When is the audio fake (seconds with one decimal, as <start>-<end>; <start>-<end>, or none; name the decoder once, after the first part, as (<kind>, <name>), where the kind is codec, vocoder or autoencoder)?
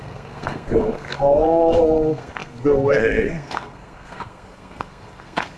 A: 0.0-5.6 (codec, SNAC)